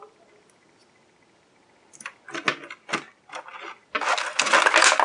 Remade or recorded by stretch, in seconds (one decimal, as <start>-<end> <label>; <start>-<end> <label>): 0.0-5.0 recorded

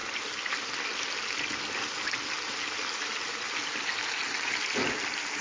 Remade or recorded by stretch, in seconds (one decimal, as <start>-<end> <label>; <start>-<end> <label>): 0.0-5.4 recorded

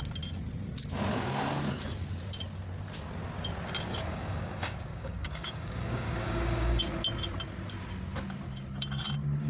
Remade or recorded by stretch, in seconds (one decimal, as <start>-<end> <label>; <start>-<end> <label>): 0.0-3.9 recorded; 3.9-6.8 remade; 6.8-9.5 recorded

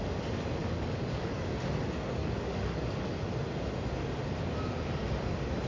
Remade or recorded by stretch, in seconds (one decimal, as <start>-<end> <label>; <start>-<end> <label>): 0.0-0.6 recorded; 0.6-1.3 remade; 1.3-2.2 recorded; 2.2-3.1 remade; 3.1-5.7 recorded

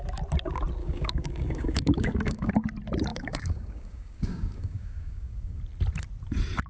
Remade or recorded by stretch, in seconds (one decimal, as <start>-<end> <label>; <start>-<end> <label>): 0.0-0.8 recorded; 0.8-2.5 remade; 2.5-3.1 recorded; 3.1-5.6 remade; 5.6-6.7 recorded

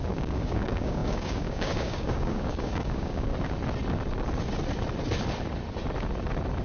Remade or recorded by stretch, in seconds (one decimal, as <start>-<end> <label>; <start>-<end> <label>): 0.0-3.3 remade; 3.3-6.6 recorded

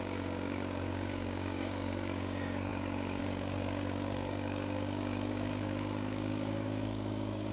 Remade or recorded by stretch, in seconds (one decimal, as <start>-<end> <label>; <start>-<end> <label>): 0.0-7.5 remade